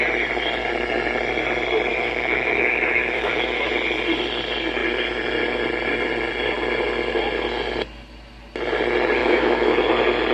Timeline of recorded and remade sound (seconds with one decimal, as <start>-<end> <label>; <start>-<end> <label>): 0.0-1.9 recorded; 1.9-3.7 remade; 3.7-9.2 recorded; 9.2-9.8 remade; 9.8-10.3 recorded